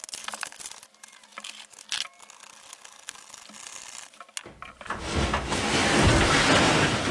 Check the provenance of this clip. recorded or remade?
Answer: recorded